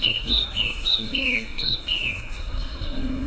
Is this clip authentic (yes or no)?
no